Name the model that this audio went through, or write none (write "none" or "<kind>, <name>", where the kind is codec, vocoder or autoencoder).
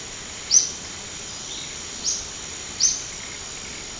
none